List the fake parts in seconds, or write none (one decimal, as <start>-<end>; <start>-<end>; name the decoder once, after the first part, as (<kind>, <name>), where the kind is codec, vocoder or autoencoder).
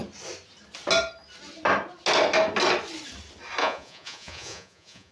3.6-5.1 (vocoder, Vocos)